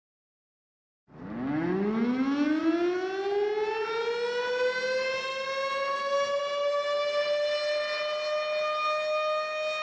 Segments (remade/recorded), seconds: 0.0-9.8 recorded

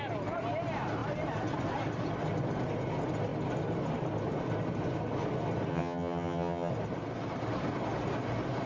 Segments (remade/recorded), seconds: 0.0-5.7 recorded; 5.7-6.7 remade; 6.7-8.7 recorded

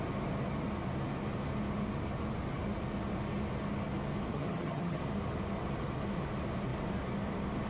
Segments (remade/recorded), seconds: 0.0-4.3 recorded; 4.3-5.0 remade; 5.0-7.7 recorded

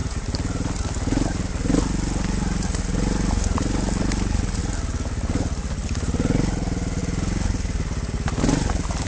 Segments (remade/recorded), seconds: 0.0-9.1 recorded

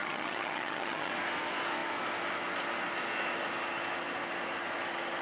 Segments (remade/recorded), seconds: 0.0-1.1 remade; 1.1-5.2 recorded